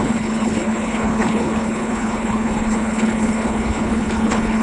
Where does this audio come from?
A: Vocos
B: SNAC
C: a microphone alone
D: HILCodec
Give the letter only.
D